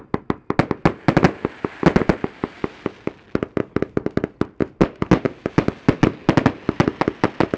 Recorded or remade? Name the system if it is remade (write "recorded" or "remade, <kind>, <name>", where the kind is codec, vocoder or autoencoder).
recorded